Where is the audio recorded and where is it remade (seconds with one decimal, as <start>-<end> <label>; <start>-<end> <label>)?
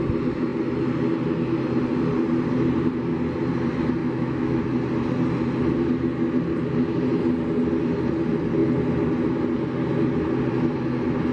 0.0-4.0 recorded; 4.0-4.6 remade; 4.6-11.3 recorded